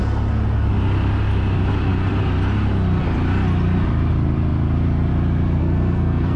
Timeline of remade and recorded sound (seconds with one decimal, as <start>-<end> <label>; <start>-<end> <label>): 0.0-5.6 recorded; 5.6-6.4 remade